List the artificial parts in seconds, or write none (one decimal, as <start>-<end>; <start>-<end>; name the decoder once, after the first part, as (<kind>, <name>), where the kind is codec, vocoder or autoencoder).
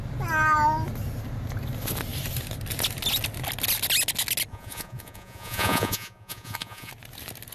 4.5-6.9 (vocoder, Vocos)